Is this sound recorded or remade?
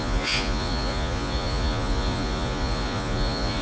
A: remade